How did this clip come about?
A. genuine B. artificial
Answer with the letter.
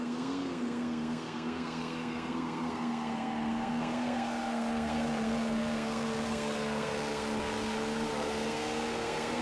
B